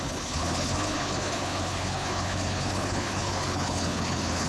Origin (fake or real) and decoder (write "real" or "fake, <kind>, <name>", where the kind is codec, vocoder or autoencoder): fake, codec, HILCodec